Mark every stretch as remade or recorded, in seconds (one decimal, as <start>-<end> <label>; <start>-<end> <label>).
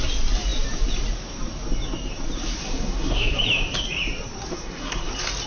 0.0-2.6 recorded; 2.6-3.4 remade; 3.4-4.5 recorded; 4.5-5.1 remade; 5.1-5.5 recorded